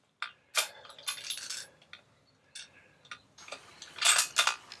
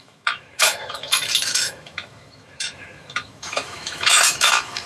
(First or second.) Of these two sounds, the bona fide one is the first